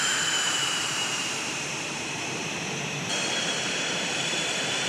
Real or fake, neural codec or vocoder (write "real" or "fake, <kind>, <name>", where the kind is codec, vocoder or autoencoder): fake, vocoder, BigVGAN v2